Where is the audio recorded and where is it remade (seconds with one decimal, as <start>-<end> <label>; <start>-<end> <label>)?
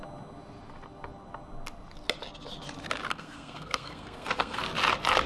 0.0-3.1 recorded; 3.1-4.6 remade; 4.6-5.3 recorded